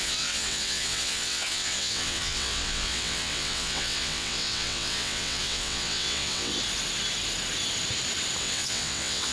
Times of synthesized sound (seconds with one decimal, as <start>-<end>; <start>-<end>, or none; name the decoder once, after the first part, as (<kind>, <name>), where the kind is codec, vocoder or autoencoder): 0.0-6.5 (vocoder, WaveNeXt); 8.4-9.3